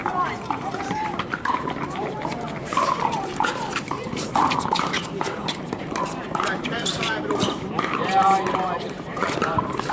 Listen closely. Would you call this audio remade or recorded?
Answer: remade